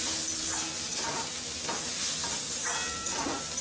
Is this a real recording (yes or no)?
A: yes